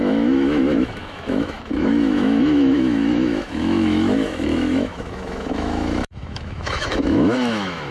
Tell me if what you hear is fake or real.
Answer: fake